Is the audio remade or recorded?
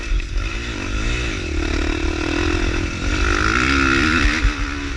recorded